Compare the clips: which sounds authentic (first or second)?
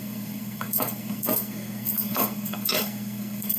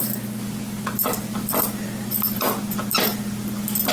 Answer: second